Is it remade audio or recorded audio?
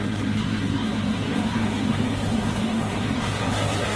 remade